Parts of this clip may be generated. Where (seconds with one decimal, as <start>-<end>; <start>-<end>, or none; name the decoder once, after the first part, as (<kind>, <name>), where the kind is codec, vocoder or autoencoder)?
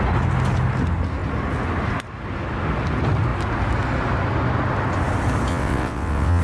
5.5-6.4 (vocoder, WaveNeXt)